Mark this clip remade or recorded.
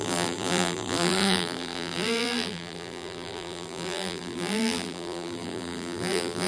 remade